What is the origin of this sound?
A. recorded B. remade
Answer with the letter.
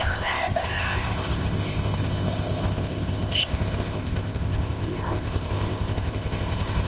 B